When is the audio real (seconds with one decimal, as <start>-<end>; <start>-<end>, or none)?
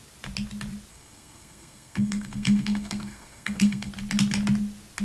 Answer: 0.0-0.9; 3.9-5.0